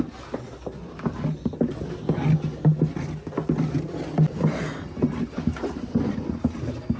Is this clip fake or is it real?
real